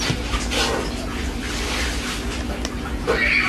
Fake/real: real